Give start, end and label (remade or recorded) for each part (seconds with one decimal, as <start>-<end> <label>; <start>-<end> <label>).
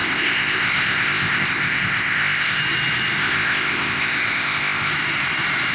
0.0-2.6 remade; 2.6-3.2 recorded; 3.2-4.9 remade; 4.9-5.7 recorded